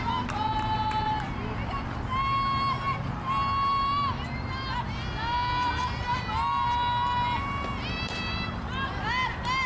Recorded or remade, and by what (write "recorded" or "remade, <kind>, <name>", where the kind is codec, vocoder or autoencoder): recorded